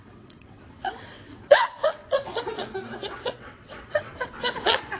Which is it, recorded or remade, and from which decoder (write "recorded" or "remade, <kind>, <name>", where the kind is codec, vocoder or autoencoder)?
remade, vocoder, WaveNeXt